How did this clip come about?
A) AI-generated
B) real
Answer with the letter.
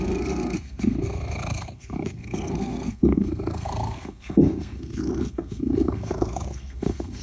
A